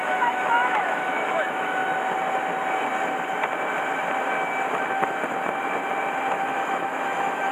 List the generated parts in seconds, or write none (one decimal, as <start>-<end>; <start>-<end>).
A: 0.0-1.8; 6.3-7.5